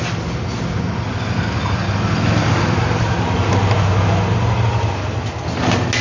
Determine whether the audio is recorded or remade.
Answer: recorded